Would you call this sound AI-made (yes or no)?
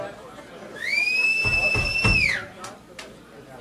no